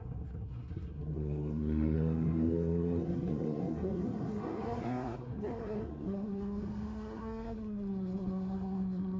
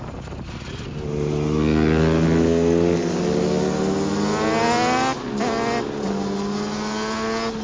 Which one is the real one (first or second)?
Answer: second